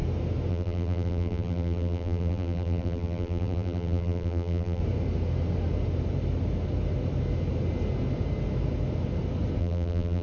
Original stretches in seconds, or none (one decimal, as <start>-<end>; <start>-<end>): 0.0-0.5; 4.8-9.6